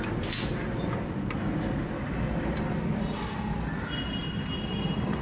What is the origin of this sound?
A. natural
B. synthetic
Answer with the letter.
A